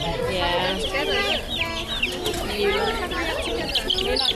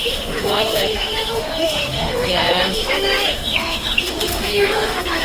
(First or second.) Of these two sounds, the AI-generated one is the second